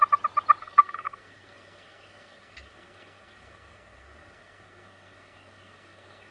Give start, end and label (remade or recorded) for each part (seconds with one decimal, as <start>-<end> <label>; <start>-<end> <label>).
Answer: 0.0-0.6 recorded; 0.6-6.3 remade